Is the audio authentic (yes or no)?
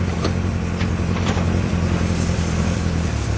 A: no